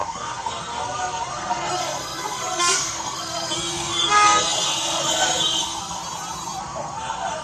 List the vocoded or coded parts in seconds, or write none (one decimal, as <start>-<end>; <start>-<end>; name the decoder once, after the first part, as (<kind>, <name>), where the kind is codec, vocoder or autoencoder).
0.0-6.0 (codec, SNAC); 6.6-7.4

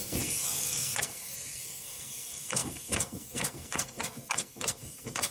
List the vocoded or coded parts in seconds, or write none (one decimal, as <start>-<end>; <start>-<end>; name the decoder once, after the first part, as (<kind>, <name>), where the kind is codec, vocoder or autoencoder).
0.0-5.3 (codec, SNAC)

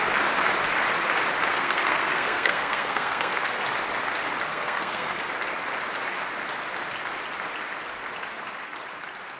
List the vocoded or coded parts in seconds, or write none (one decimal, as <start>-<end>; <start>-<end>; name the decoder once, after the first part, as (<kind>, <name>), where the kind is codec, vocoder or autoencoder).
1.5-3.6 (codec, SNAC); 4.5-5.2

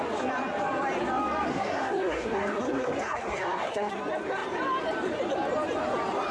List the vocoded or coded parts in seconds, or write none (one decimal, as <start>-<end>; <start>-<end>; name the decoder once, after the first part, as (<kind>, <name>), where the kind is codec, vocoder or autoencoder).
1.5-3.9 (codec, SNAC)

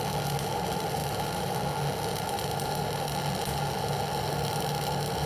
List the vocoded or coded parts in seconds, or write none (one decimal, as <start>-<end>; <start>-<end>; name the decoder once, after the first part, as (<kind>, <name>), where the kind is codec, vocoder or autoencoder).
none

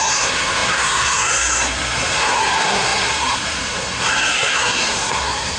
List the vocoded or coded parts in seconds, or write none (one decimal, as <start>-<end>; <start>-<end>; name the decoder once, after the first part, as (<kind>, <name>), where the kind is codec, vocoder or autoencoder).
0.0-5.6 (codec, SNAC)

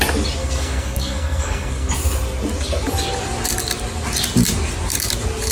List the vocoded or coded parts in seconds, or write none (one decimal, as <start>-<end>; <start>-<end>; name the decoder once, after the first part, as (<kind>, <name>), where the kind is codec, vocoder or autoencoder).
0.4-1.9 (codec, SNAC)

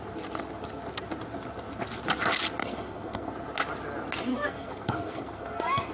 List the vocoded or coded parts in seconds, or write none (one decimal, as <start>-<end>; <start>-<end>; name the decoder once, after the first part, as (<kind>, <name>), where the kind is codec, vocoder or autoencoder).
2.6-3.3 (codec, SNAC); 4.3-5.9